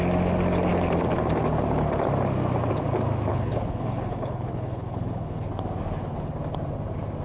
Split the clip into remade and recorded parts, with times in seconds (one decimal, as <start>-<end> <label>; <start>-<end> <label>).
0.0-3.3 recorded; 3.3-5.5 remade; 5.5-7.2 recorded